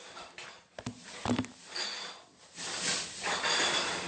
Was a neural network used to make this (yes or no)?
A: no